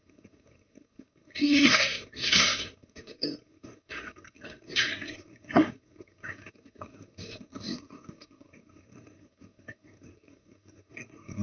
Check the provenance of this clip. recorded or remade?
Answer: remade